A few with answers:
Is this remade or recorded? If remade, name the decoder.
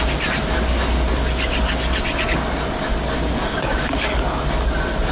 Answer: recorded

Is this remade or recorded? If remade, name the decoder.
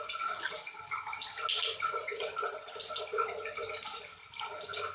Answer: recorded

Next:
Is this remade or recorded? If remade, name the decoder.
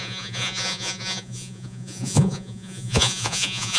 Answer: remade, vocoder, Vocos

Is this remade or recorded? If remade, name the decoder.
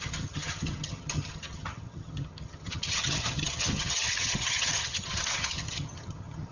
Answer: remade, vocoder, HiFi-GAN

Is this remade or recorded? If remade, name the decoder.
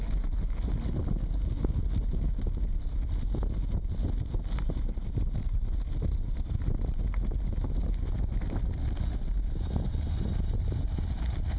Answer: recorded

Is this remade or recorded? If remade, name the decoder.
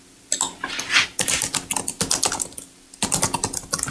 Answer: recorded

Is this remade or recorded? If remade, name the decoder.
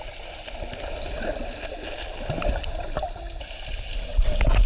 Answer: recorded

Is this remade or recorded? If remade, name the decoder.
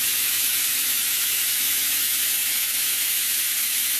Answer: remade, autoencoder, DAC-VAE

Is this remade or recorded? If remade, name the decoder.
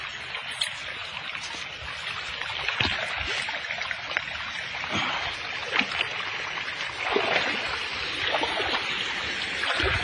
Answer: recorded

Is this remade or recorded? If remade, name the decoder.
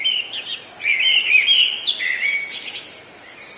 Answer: recorded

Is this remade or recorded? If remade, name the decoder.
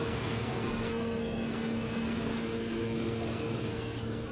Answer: remade, codec, SNAC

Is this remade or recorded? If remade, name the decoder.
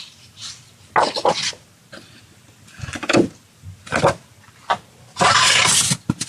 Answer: recorded